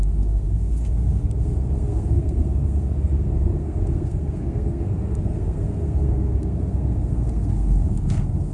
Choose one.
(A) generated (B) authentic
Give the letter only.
A